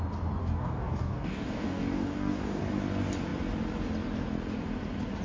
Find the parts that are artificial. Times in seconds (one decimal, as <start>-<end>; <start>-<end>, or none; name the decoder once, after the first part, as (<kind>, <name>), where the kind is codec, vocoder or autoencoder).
0.4-2.6 (codec, DAC)